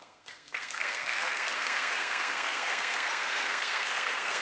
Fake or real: fake